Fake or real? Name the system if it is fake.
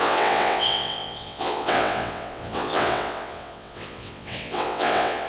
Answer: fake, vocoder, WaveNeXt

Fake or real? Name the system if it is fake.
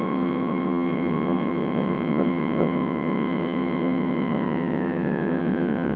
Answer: fake, vocoder, WaveNeXt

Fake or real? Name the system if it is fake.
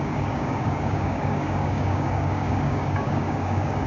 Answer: fake, codec, DAC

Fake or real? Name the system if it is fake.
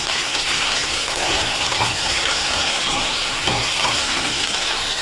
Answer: fake, codec, SNAC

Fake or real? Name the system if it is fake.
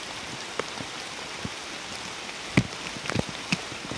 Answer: real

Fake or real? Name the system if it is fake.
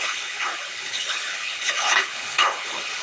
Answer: fake, codec, HILCodec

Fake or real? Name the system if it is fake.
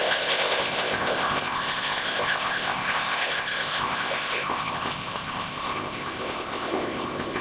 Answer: fake, codec, ZipCodec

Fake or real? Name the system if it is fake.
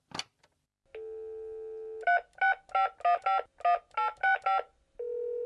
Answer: real